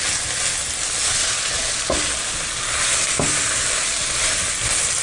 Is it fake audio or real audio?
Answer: real